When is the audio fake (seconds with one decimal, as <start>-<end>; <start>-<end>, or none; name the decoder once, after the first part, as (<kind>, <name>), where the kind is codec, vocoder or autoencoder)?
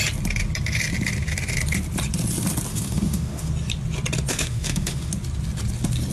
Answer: 2.7-3.5 (autoencoder, DAC-VAE); 4.3-5.1